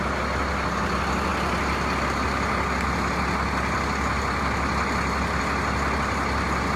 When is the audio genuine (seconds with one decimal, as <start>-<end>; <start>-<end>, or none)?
0.0-6.8